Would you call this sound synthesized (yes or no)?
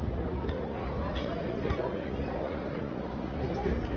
yes